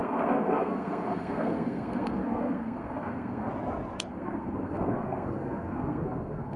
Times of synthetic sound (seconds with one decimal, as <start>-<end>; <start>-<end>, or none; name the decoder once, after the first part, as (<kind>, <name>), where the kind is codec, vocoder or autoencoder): 0.0-3.5 (codec, SNAC); 4.1-6.6